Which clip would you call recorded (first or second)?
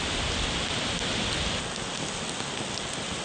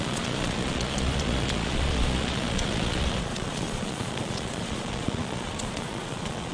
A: first